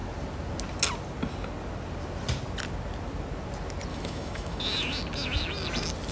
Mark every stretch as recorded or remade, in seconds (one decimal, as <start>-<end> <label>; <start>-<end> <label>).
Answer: 0.0-3.9 recorded; 3.9-4.6 remade; 4.6-6.1 recorded